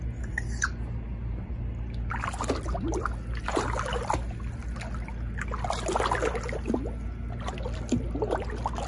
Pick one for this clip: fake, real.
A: real